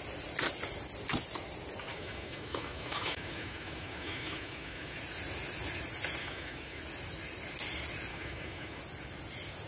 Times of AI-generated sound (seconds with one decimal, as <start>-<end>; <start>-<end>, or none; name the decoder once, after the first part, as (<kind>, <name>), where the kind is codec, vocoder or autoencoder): 1.9-5.0 (autoencoder, DAC-VAE); 6.2-6.8; 8.1-8.8